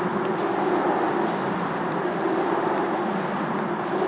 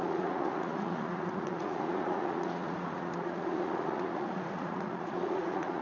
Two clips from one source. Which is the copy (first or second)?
second